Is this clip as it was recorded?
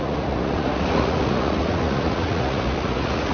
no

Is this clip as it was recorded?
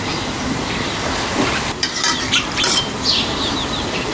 no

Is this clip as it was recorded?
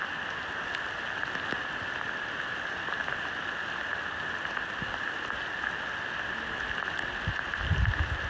yes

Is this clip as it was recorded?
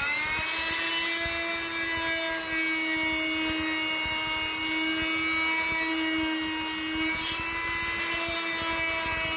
yes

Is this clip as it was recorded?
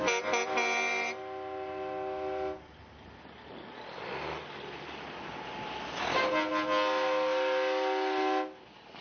yes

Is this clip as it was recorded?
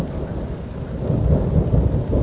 yes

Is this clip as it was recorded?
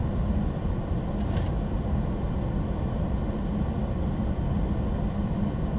yes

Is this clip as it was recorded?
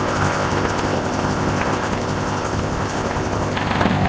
no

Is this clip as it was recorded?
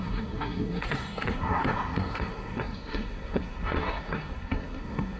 no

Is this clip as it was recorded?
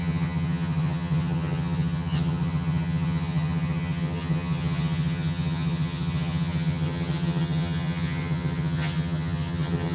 no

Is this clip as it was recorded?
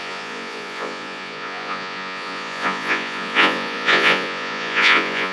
no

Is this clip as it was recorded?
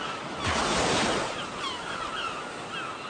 yes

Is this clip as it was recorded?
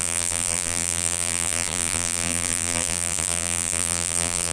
no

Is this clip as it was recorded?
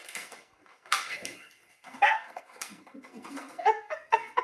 no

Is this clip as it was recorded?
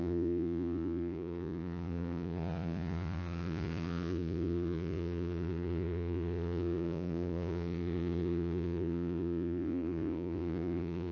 no